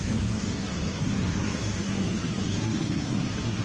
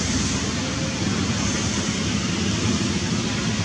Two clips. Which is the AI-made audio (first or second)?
first